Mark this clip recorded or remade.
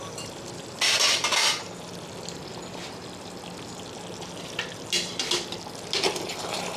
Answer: recorded